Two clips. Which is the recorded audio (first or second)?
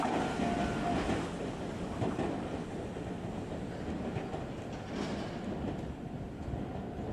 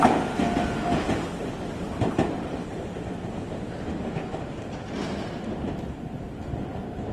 first